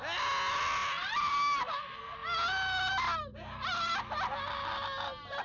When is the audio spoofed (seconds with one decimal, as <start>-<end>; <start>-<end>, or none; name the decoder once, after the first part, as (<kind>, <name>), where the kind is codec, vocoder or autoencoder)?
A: 3.3-4.0 (vocoder, BigVGAN v2)